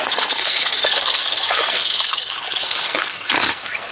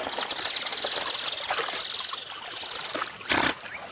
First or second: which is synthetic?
first